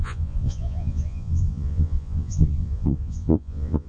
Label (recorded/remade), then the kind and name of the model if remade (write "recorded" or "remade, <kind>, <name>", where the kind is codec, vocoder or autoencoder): remade, vocoder, Vocos